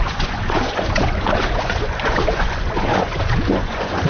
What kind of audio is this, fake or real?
fake